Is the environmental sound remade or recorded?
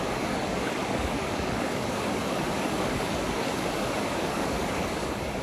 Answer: remade